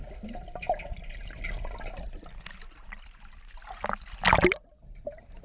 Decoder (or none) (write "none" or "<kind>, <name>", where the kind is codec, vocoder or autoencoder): none